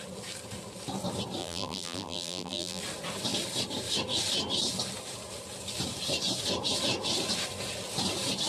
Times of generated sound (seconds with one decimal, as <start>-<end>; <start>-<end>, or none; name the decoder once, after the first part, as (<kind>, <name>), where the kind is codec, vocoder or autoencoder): 1.4-2.8 (vocoder, BigVGAN v2)